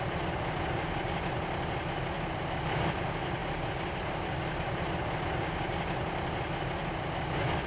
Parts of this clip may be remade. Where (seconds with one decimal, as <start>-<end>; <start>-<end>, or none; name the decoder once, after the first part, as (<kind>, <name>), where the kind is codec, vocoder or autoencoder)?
none